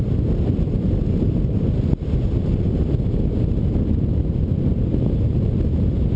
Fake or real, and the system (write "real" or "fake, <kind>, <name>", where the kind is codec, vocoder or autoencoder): real